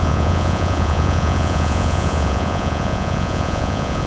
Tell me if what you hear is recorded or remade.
remade